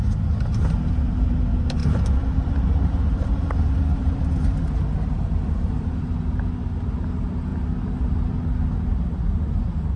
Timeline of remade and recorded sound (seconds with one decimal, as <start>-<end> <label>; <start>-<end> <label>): 0.0-1.8 recorded; 1.8-6.0 remade; 6.0-10.0 recorded